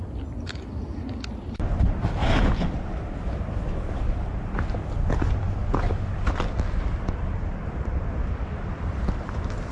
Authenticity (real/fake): real